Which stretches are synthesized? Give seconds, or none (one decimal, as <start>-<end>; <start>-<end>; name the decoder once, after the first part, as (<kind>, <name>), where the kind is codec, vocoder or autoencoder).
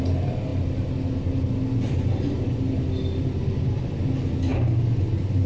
none